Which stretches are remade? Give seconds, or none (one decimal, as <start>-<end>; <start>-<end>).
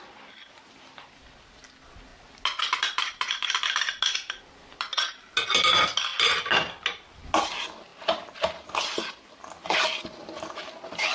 none